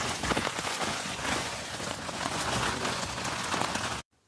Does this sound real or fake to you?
fake